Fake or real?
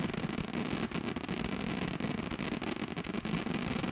real